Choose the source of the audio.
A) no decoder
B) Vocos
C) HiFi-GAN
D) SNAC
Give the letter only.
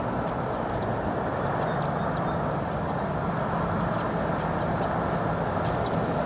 A